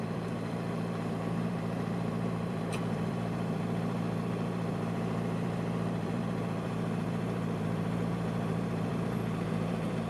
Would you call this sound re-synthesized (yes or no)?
yes